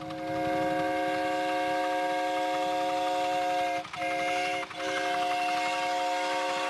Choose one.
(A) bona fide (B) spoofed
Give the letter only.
A